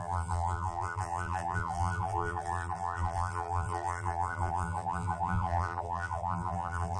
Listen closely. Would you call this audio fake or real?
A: fake